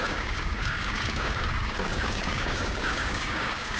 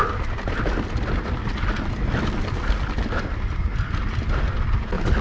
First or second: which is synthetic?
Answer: first